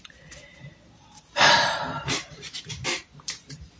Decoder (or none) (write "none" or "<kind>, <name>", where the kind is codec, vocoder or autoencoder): vocoder, BigVGAN v2